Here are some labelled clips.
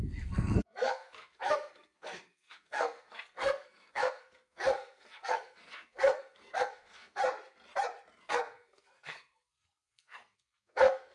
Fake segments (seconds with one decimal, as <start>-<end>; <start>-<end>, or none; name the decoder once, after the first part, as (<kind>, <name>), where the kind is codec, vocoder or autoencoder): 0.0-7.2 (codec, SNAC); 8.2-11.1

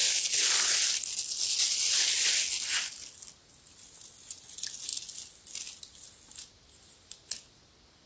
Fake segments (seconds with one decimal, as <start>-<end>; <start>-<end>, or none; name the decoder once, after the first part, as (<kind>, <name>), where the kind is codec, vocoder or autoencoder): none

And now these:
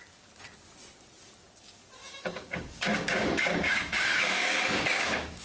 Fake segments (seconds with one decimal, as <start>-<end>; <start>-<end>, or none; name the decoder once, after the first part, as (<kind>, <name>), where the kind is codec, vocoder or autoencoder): 2.0-5.4 (codec, DAC)

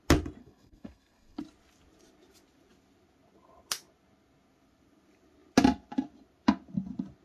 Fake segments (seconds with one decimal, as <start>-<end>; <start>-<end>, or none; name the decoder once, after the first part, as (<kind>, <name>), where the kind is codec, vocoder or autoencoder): 0.4-1.4 (codec, SNAC)